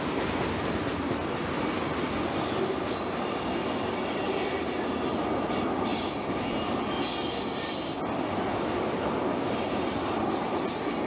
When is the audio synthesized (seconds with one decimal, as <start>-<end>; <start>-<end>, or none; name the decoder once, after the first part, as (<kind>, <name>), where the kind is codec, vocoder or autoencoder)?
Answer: none